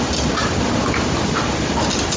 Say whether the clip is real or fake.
real